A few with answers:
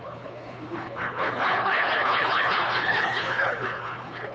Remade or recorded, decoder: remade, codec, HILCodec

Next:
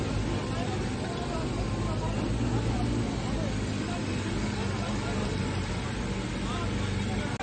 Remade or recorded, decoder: recorded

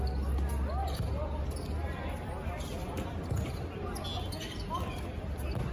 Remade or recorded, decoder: recorded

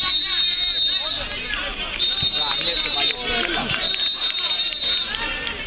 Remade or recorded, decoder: recorded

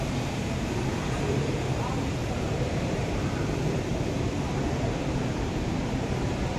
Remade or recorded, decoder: remade, vocoder, BigVGAN v2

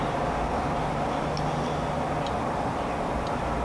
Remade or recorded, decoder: recorded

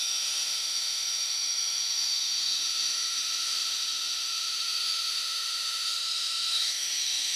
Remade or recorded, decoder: remade, autoencoder, DAC-VAE